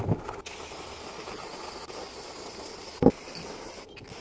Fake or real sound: real